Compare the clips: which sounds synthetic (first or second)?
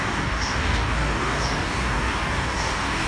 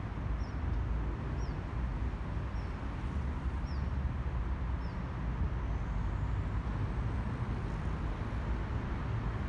first